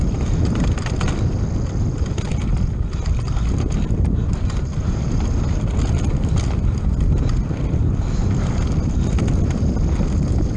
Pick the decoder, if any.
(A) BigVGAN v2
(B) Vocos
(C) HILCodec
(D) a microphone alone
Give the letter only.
D